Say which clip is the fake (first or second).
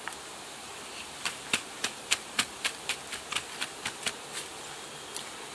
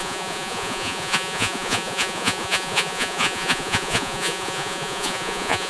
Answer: second